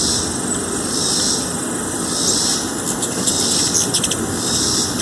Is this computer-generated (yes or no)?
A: no